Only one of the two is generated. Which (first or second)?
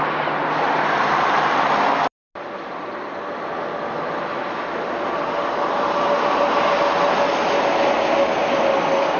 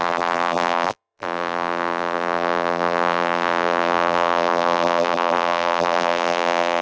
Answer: second